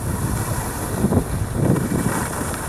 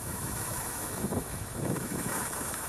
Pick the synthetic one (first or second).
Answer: second